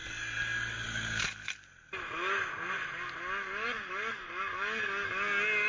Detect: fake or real real